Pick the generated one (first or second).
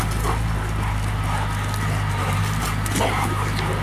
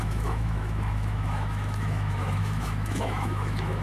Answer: second